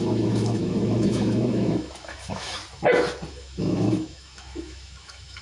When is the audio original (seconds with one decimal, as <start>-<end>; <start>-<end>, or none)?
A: 2.6-3.3